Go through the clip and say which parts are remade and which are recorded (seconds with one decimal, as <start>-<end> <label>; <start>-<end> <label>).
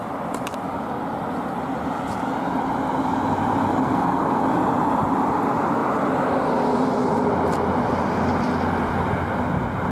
0.0-3.8 recorded; 3.8-4.4 remade; 4.4-9.9 recorded